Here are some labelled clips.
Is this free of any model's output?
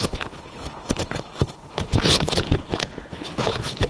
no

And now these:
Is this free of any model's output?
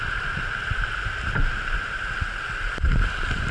yes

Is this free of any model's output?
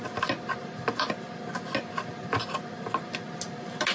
yes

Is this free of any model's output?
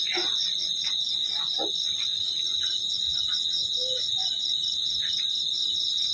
yes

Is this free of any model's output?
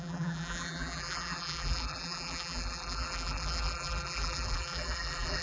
no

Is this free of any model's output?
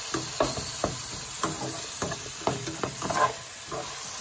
yes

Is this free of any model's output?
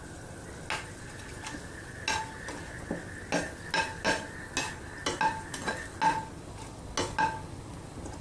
yes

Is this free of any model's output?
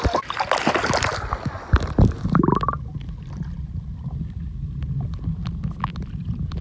yes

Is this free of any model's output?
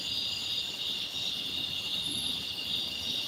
yes